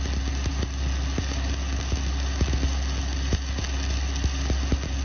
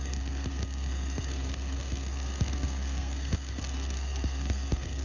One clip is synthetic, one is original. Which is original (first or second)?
first